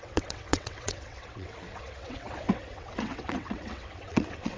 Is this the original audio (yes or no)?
no